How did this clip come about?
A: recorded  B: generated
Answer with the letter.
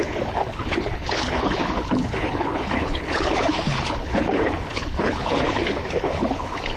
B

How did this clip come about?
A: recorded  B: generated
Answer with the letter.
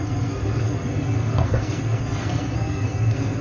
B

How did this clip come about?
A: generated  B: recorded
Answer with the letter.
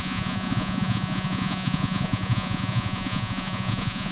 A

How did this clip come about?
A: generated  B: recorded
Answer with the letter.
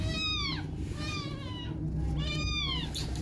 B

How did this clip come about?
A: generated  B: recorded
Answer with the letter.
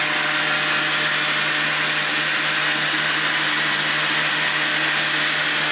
B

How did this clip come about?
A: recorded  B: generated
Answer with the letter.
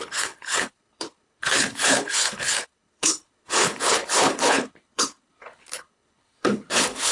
B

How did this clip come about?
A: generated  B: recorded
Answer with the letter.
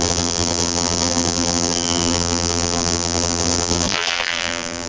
A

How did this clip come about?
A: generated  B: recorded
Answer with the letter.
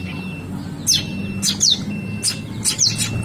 B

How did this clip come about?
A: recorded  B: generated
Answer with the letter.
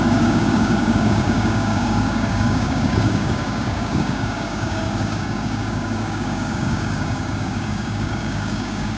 B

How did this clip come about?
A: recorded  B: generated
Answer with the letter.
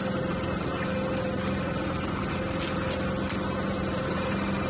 A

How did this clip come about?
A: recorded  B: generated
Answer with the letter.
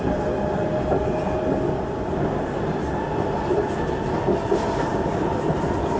A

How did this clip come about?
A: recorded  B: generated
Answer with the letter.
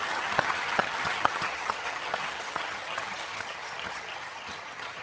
B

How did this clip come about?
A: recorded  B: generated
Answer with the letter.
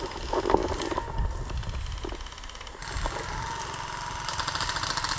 A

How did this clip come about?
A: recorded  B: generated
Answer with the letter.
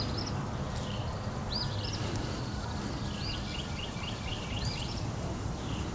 A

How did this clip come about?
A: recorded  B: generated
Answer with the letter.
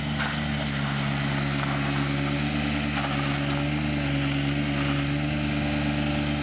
A